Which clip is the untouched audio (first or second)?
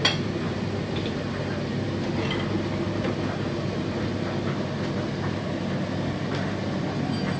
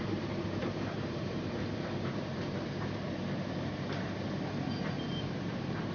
first